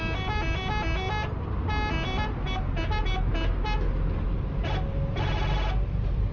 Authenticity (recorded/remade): recorded